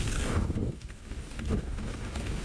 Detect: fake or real fake